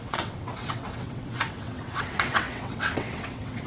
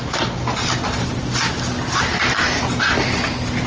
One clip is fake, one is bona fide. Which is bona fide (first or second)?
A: second